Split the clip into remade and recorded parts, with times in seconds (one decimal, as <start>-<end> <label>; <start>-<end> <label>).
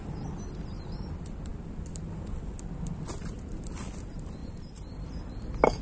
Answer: 0.0-4.4 recorded; 4.4-5.3 remade; 5.3-5.8 recorded